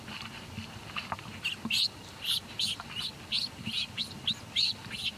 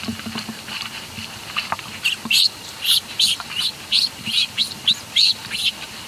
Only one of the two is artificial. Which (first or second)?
second